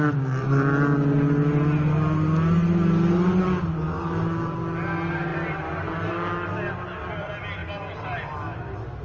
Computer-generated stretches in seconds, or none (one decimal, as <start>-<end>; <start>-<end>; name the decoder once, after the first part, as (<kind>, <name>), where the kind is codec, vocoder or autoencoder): none